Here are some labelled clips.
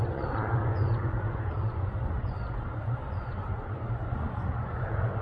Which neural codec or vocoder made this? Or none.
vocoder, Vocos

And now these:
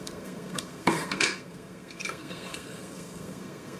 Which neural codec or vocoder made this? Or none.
codec, SNAC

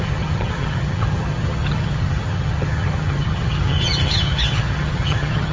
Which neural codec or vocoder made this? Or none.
vocoder, HiFi-GAN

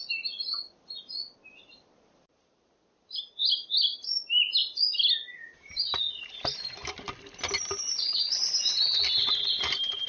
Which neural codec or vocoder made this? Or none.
none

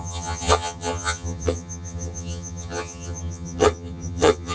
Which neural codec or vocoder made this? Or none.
vocoder, HiFi-GAN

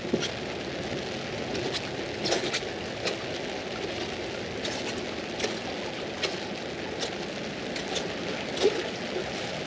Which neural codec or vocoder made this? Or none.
none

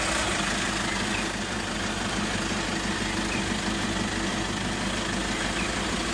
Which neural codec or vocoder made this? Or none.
none